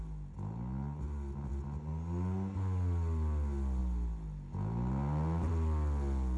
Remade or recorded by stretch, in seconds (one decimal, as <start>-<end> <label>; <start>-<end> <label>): 0.0-6.4 recorded